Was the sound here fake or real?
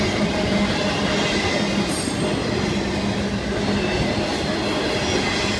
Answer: real